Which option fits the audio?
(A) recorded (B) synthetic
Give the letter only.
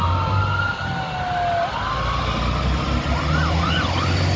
A